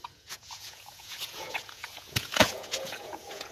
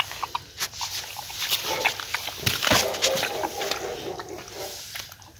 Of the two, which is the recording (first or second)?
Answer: second